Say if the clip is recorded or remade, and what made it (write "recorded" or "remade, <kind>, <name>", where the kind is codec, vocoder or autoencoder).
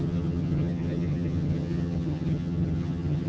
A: remade, vocoder, HiFi-GAN